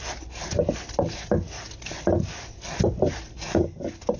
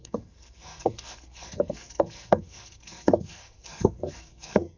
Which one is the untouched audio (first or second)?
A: first